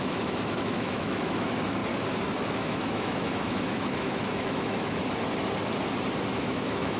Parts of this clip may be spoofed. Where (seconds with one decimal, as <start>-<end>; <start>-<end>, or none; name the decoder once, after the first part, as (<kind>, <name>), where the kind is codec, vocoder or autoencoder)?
0.0-1.8 (autoencoder, DAC-VAE); 2.4-5.0; 6.4-7.0